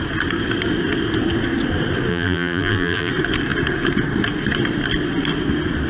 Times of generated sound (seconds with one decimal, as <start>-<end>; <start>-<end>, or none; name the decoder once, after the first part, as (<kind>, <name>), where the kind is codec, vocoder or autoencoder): 2.1-3.1 (vocoder, BigVGAN v2)